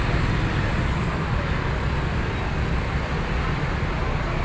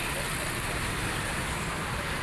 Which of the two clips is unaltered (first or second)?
first